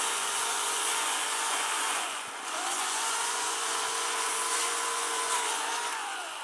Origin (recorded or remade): remade